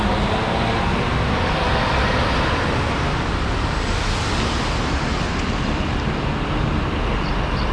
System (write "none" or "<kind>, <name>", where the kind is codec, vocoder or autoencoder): none